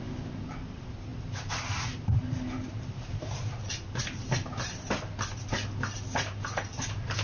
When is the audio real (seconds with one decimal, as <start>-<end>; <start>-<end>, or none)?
0.0-1.1; 4.9-7.2